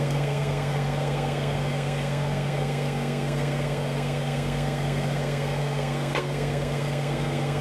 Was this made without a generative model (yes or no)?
no